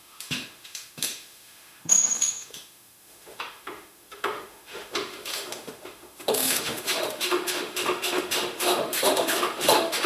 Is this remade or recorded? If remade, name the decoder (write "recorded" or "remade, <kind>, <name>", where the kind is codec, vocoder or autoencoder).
remade, autoencoder, DAC-VAE